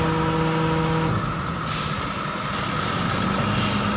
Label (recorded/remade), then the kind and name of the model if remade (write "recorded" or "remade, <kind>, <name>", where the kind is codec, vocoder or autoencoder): recorded